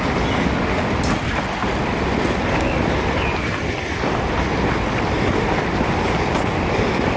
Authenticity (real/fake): real